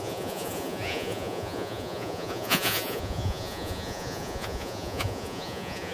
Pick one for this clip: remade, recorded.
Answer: remade